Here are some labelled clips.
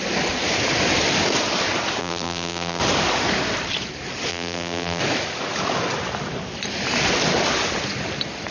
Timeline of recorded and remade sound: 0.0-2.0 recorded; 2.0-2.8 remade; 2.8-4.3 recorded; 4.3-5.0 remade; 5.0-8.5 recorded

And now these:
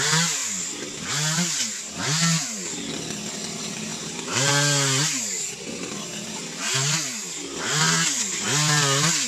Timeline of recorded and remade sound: 0.0-9.3 recorded

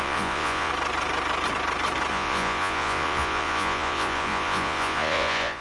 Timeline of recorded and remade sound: 0.0-0.7 remade; 0.7-2.1 recorded; 2.1-5.6 remade

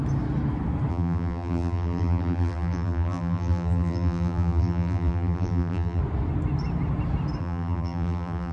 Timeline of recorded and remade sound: 0.0-0.9 recorded; 0.9-6.0 remade; 6.0-7.4 recorded; 7.4-8.5 remade

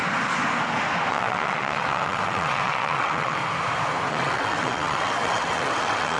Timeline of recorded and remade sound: 0.0-1.1 recorded; 1.1-3.4 remade; 3.4-4.1 recorded; 4.1-6.2 remade

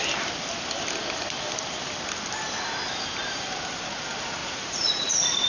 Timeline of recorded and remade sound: 0.0-4.4 recorded; 4.4-5.5 remade

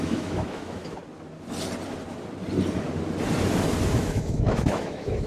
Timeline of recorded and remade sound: 0.0-1.0 remade; 1.0-3.9 recorded; 3.9-5.3 remade